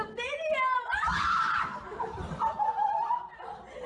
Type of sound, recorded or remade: remade